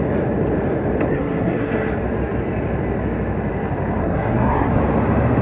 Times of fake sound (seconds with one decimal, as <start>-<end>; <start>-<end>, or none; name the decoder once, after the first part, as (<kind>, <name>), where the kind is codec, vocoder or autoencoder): 1.1-1.9 (codec, SNAC); 4.0-4.8

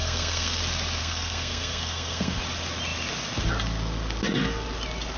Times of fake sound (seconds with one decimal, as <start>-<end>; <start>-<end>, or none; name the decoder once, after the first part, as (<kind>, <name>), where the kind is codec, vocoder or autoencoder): 0.0-0.6 (codec, SNAC); 1.0-2.4

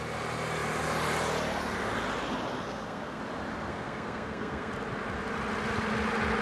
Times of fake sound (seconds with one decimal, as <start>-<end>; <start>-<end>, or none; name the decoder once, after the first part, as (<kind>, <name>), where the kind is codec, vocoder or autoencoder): 2.7-3.2 (codec, SNAC); 3.7-4.7